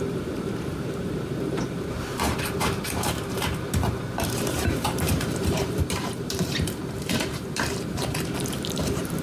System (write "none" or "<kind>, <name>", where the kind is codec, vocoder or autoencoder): vocoder, BigVGAN v2